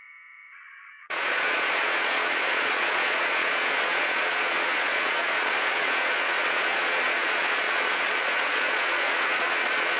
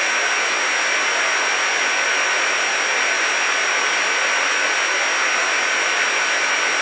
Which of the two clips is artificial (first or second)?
first